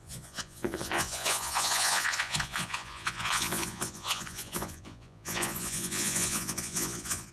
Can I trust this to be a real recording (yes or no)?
no